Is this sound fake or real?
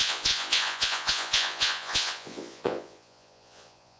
fake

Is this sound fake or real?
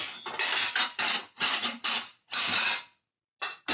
real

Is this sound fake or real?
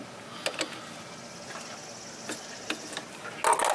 real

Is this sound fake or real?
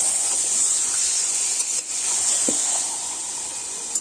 fake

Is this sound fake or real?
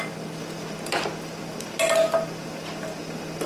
real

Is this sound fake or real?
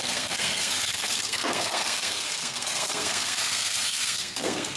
fake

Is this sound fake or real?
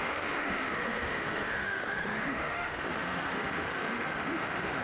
fake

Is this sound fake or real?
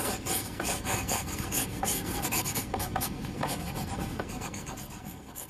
fake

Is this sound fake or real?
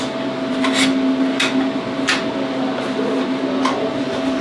real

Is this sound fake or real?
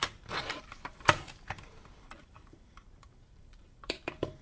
fake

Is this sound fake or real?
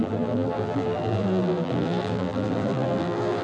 fake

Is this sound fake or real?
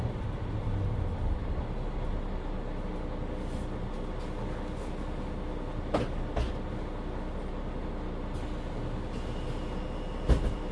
real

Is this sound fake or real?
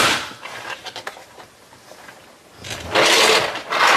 real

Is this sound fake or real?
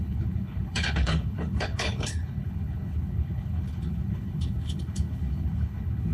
fake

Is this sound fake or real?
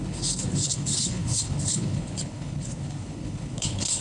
fake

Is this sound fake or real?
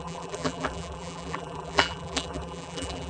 fake